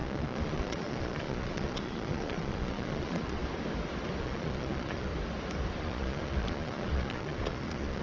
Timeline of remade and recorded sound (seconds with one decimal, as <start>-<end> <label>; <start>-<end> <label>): 0.0-3.4 remade; 3.4-4.2 recorded; 4.2-5.1 remade; 5.1-5.8 recorded; 5.8-8.0 remade